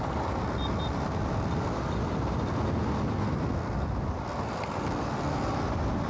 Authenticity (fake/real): real